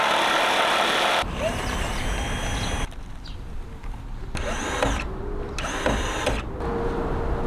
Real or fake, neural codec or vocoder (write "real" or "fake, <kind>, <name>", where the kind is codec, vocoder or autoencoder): real